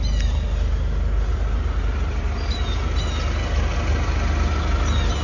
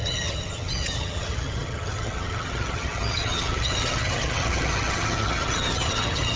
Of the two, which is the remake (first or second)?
second